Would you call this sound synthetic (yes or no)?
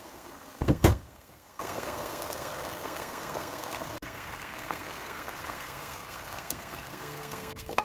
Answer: yes